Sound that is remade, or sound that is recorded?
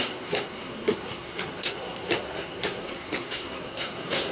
remade